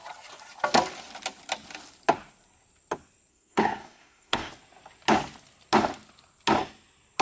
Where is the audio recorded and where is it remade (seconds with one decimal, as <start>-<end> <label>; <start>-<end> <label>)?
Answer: 0.0-3.3 recorded; 3.3-4.5 remade; 4.5-7.2 recorded